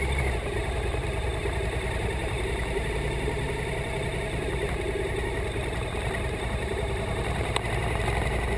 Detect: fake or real fake